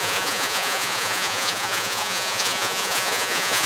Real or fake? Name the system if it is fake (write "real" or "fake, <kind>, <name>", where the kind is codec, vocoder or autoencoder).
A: fake, vocoder, Vocos